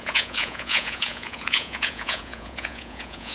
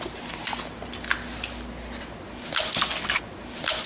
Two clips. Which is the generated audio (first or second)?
first